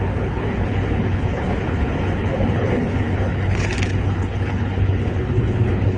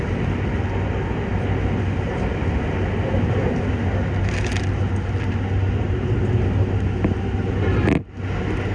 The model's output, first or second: first